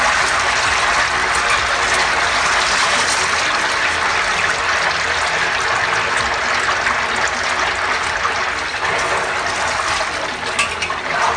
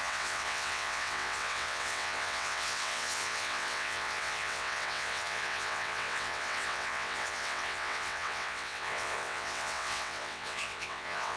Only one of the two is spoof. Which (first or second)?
second